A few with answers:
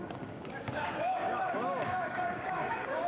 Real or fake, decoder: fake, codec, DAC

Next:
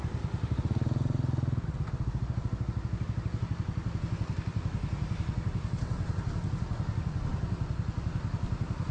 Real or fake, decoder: real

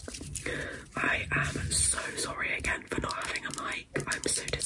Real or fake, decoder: real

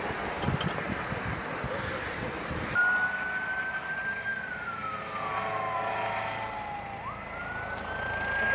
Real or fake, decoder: real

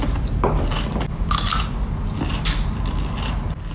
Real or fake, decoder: real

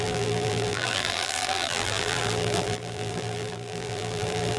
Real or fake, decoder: fake, vocoder, BigVGAN v2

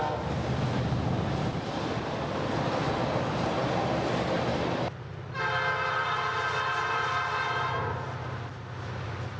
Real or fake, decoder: real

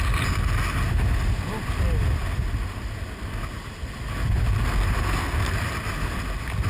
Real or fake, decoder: real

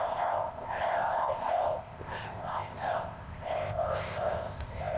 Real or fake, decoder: fake, codec, ZipCodec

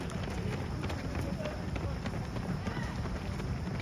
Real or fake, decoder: real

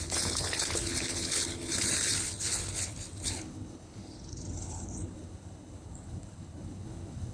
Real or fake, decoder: fake, codec, HILCodec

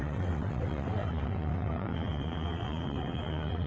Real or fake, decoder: fake, vocoder, WaveNeXt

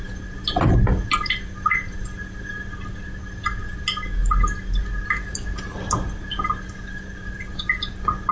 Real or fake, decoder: real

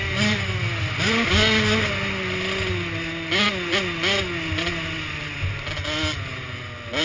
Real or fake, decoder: real